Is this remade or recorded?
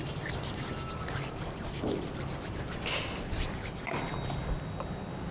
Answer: recorded